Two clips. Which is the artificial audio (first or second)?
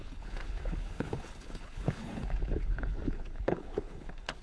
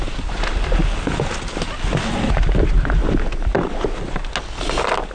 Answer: first